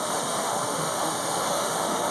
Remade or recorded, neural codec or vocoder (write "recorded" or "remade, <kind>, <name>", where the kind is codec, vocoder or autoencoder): remade, autoencoder, DAC-VAE